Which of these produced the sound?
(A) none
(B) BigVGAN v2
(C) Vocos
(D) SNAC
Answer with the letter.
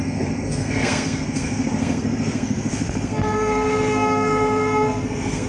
D